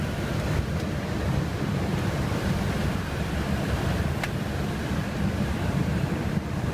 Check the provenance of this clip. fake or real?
fake